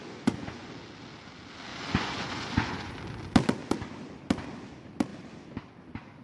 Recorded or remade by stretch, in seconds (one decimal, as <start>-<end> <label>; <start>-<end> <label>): 0.0-0.7 remade; 0.7-1.7 recorded; 1.7-2.9 remade; 2.9-6.2 recorded